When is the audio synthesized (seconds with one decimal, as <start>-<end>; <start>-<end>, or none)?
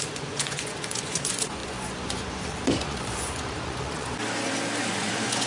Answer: 0.0-4.1; 4.9-5.5